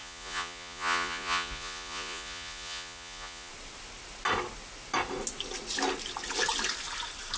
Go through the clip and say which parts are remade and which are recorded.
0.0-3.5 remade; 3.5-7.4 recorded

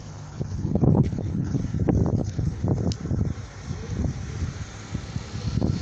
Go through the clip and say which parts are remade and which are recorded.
0.0-1.6 remade; 1.6-2.1 recorded; 2.1-2.6 remade; 2.6-5.8 recorded